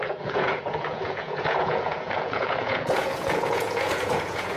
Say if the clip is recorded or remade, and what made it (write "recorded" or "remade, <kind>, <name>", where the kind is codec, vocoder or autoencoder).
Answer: remade, vocoder, Vocos